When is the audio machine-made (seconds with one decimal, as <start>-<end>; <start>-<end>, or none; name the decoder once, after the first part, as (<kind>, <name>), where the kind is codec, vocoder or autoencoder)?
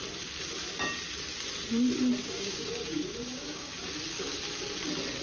2.2-3.7 (codec, DAC)